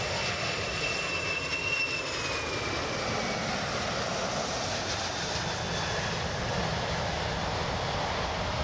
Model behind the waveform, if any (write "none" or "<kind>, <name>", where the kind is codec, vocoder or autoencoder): none